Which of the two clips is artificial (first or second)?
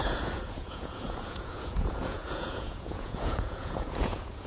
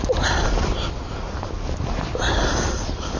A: first